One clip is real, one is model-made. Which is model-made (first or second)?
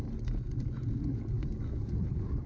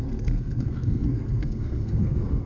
second